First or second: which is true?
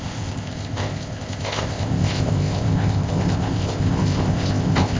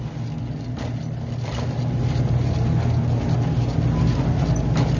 second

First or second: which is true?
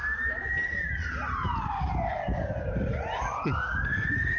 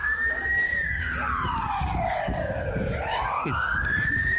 first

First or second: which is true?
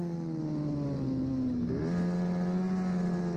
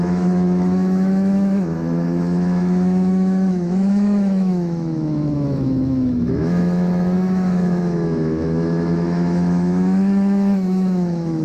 first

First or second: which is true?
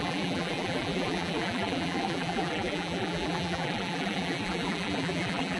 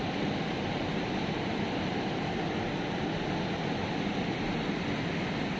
second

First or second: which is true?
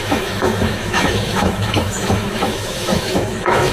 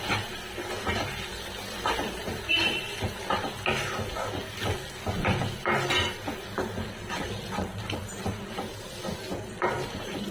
second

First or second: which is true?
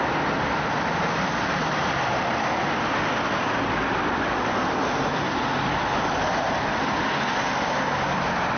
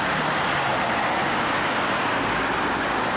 second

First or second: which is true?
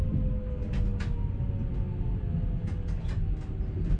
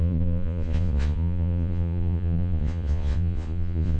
first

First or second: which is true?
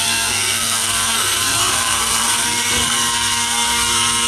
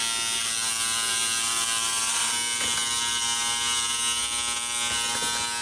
second